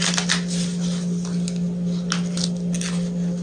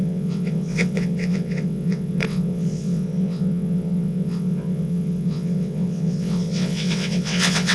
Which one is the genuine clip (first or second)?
first